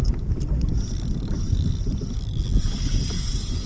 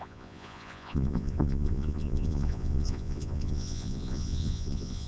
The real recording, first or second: first